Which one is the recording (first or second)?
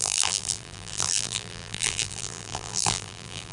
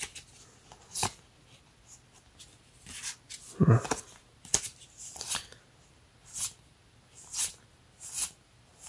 second